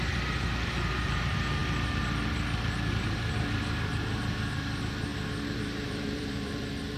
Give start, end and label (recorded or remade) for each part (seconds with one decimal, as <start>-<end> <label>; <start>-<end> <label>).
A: 0.0-1.6 remade; 1.6-2.9 recorded; 2.9-5.1 remade; 5.1-5.6 recorded; 5.6-7.0 remade